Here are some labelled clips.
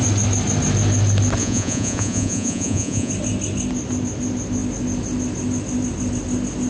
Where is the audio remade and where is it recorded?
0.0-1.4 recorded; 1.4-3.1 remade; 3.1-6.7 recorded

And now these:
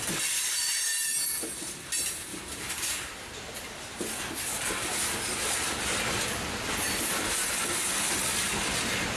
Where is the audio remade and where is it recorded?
0.0-2.3 recorded; 2.3-7.6 remade; 7.6-9.2 recorded

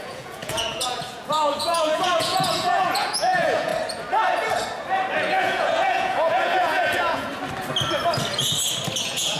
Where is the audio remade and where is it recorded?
0.0-3.7 remade; 3.7-5.3 recorded; 5.3-7.3 remade; 7.3-9.0 recorded; 9.0-9.4 remade

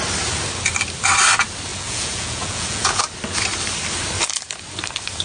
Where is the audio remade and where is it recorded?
0.0-1.7 recorded; 1.7-3.0 remade; 3.0-5.2 recorded